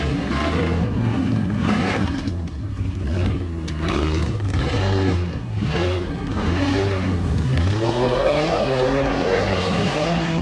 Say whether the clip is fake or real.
fake